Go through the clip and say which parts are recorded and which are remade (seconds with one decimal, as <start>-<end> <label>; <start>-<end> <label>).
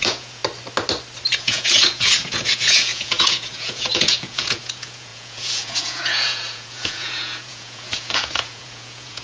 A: 0.0-0.4 remade; 0.4-1.4 recorded; 1.4-9.2 remade